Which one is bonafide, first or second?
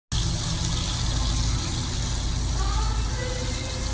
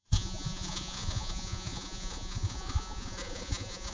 first